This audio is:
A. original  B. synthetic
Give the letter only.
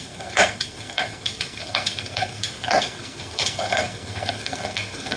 B